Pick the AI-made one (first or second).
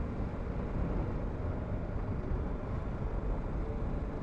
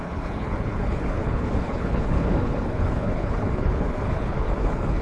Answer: second